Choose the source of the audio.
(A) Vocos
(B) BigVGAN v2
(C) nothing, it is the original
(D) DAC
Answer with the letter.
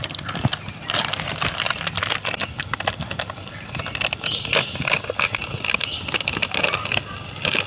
C